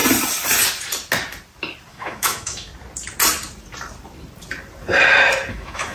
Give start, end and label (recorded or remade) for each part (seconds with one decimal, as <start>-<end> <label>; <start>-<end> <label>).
0.0-1.9 recorded; 1.9-2.7 remade; 2.7-5.5 recorded; 5.5-5.9 remade